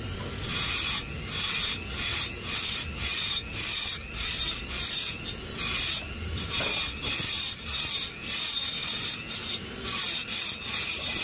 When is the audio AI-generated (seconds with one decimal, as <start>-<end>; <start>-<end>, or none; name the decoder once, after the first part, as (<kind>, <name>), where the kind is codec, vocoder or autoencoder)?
3.5-6.6 (vocoder, BigVGAN v2)